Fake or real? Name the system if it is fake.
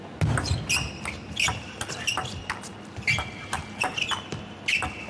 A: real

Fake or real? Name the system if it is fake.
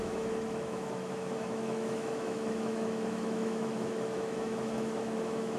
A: fake, autoencoder, DAC-VAE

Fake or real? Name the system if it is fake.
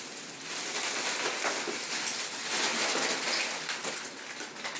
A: real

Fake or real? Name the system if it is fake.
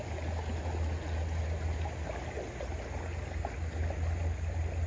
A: real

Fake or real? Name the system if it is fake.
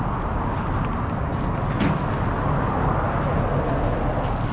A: real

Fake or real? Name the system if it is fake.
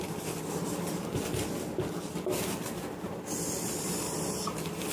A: real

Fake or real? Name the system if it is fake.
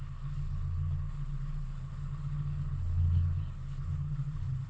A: fake, codec, HILCodec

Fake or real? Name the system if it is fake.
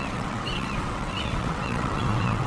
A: fake, vocoder, WaveNeXt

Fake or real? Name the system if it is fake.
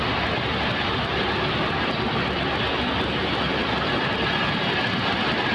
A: real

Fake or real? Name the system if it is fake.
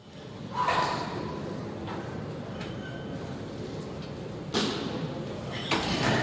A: real